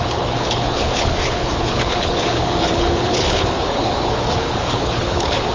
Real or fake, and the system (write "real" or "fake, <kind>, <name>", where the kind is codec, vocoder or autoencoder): fake, codec, HILCodec